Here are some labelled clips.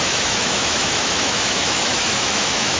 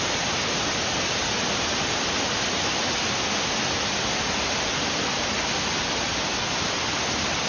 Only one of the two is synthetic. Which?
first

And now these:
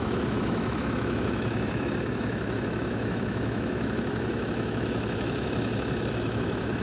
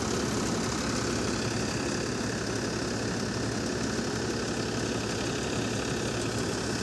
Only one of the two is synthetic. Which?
first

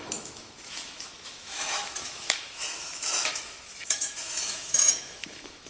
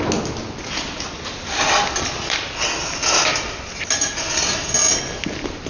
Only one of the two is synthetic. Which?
first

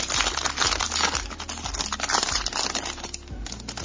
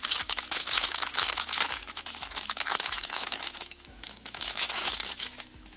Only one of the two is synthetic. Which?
second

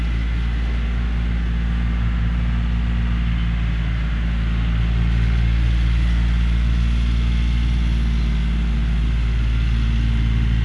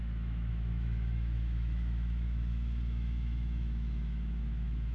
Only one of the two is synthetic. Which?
second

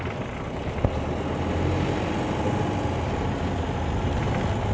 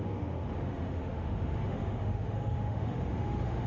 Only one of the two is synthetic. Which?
second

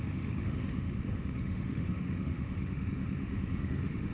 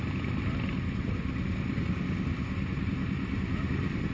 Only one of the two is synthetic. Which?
first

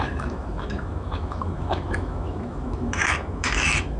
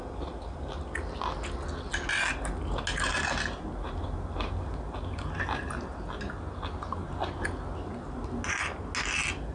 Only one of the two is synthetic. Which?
first